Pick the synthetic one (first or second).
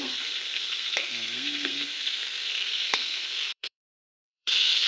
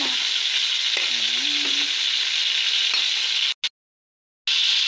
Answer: first